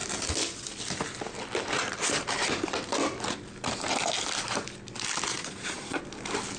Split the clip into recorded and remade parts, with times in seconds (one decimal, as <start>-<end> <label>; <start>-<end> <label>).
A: 0.0-5.3 recorded; 5.3-6.0 remade; 6.0-6.6 recorded